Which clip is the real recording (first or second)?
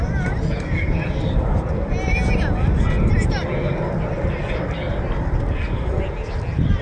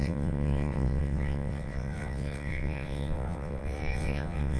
first